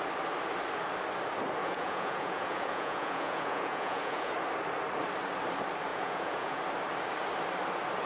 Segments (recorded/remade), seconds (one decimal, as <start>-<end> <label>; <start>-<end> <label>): 0.0-1.6 recorded; 1.6-4.3 remade; 4.3-5.9 recorded; 5.9-6.6 remade; 6.6-8.1 recorded